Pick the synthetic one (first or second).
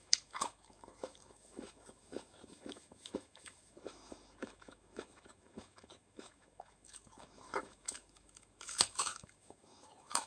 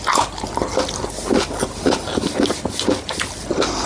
first